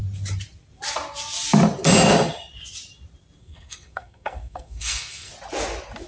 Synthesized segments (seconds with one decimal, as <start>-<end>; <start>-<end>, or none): 3.4-5.3

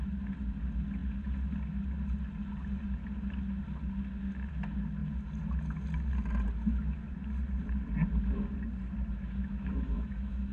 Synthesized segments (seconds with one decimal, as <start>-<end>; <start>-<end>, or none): 9.4-10.5

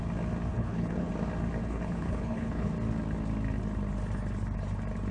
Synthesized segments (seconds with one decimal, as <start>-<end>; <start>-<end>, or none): 0.5-1.1; 1.6-2.7

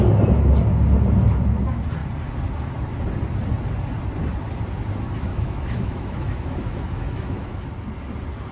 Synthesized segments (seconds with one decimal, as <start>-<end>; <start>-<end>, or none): 5.3-7.6

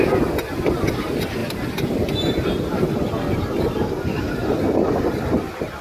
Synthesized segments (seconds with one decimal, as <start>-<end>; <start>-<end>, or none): none